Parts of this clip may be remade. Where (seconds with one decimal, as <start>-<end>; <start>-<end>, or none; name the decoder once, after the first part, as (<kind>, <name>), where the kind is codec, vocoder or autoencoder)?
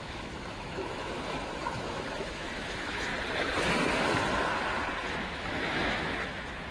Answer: 0.0-3.1 (autoencoder, DAC-VAE); 5.2-6.7